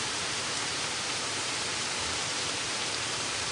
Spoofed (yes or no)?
yes